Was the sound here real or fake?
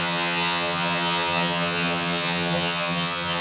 fake